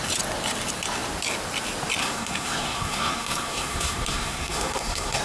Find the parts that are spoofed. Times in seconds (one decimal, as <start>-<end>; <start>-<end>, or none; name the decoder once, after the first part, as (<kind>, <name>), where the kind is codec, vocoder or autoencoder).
2.0-5.2 (codec, SNAC)